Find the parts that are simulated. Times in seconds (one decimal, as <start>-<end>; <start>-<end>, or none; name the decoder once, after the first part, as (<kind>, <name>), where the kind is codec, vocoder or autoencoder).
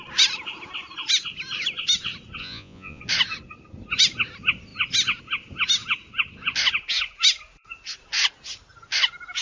2.4-3.0 (vocoder, Vocos)